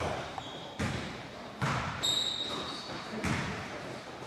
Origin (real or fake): fake